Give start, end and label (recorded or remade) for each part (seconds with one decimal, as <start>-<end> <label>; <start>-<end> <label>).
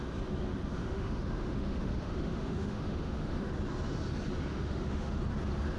0.0-0.8 recorded; 0.8-3.5 remade; 3.5-4.5 recorded; 4.5-5.2 remade; 5.2-5.8 recorded